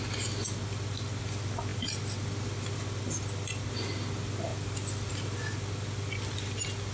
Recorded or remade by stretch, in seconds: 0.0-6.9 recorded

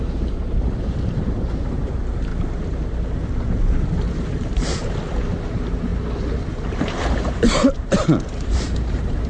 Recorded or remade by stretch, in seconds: 0.0-2.3 remade; 2.3-5.5 recorded; 5.5-5.9 remade; 5.9-6.5 recorded; 6.5-9.3 remade